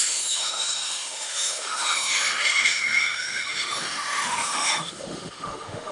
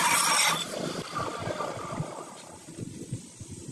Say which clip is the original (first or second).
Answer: second